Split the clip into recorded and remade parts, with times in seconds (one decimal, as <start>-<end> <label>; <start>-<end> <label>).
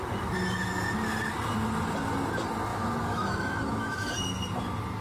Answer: 0.0-2.7 recorded; 2.7-4.1 remade; 4.1-5.0 recorded